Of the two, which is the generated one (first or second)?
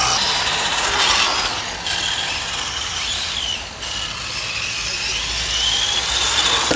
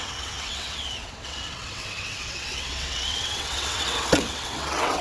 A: second